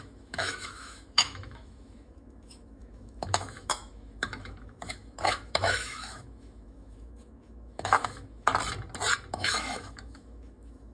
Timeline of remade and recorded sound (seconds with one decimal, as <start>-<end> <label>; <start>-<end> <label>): 0.0-8.5 remade; 8.5-9.3 recorded; 9.3-10.9 remade